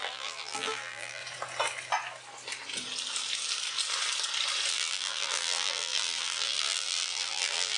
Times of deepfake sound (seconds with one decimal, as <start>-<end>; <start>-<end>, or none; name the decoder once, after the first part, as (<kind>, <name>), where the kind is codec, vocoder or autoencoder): 0.0-1.2 (vocoder, BigVGAN v2); 4.7-7.8